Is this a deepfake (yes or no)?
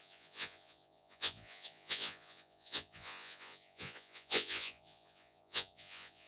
yes